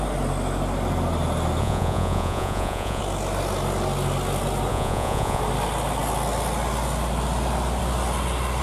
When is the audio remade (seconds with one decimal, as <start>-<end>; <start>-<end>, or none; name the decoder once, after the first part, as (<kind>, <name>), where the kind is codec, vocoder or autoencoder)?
1.6-3.0 (vocoder, Vocos); 4.7-5.4